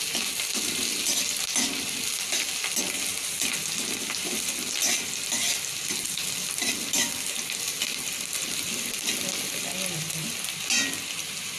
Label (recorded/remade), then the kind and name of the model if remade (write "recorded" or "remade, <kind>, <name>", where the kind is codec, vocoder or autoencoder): recorded